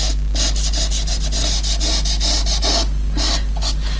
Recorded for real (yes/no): yes